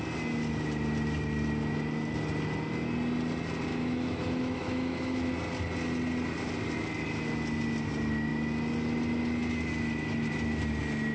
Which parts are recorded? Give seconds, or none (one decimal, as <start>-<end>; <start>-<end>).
0.0-3.7; 5.3-11.1